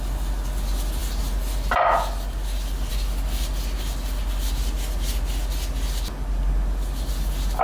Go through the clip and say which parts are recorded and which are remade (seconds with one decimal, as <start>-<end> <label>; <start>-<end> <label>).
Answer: 0.0-7.6 recorded